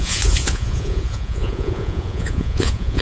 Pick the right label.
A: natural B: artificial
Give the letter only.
B